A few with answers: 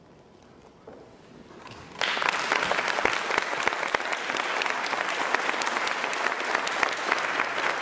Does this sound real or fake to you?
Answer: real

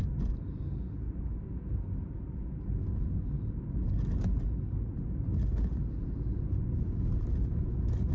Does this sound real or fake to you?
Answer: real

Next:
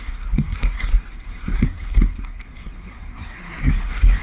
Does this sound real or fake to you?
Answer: fake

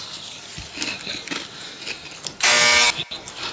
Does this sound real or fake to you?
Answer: real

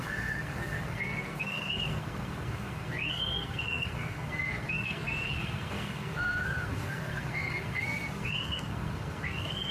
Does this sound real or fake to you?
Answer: fake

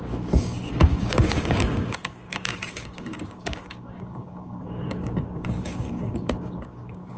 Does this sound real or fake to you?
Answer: fake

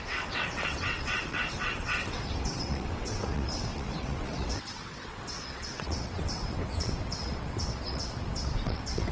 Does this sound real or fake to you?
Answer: fake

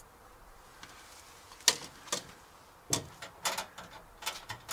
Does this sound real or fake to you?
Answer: real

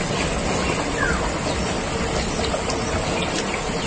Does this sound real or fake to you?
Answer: real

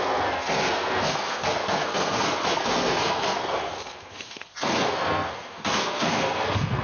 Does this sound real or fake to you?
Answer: fake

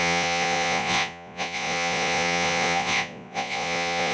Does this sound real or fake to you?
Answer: fake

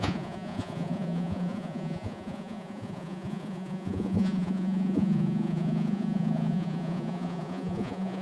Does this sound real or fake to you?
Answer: fake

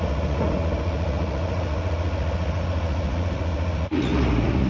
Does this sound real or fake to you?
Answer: fake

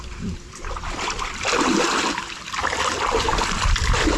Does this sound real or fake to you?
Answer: fake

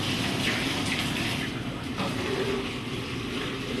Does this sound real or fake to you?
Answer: real